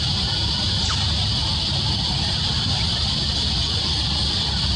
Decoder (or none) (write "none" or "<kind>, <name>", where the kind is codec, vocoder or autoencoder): none